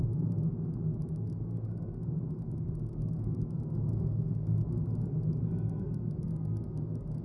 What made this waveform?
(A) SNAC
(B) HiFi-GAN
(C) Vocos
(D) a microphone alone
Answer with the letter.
A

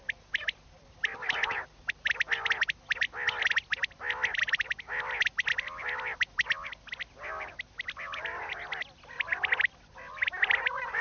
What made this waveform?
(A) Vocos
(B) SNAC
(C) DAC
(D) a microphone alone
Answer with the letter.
D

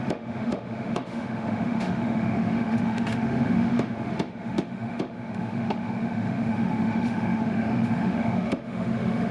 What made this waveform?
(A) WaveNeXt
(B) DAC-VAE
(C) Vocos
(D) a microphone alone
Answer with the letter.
B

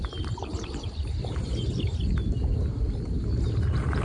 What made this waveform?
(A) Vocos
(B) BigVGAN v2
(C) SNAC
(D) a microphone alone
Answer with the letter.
D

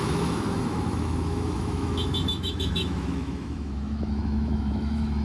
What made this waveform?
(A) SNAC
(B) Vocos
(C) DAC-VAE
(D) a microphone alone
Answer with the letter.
C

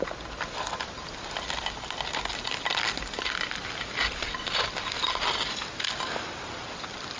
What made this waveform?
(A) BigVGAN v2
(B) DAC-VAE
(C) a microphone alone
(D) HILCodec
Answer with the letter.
C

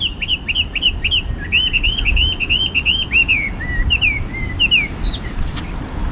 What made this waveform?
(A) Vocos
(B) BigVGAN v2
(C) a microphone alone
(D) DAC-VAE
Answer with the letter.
C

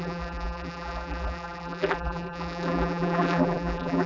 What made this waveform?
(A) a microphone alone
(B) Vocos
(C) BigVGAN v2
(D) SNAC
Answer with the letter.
C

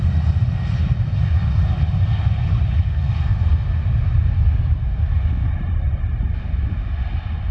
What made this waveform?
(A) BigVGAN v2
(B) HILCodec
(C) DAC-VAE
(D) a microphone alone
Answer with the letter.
D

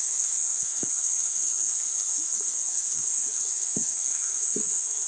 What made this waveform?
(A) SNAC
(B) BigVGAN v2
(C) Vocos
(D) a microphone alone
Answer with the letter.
A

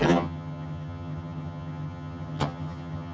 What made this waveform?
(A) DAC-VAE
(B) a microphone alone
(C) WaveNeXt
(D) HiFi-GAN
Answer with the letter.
D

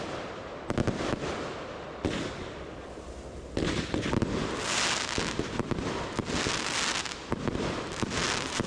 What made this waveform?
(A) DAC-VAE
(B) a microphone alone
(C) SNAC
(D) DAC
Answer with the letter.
B